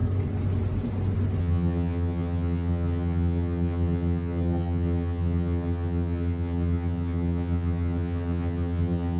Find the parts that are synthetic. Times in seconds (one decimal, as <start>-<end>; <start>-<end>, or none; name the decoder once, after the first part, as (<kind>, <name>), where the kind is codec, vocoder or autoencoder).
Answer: 1.4-9.2 (vocoder, HiFi-GAN)